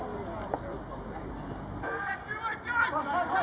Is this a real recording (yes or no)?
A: yes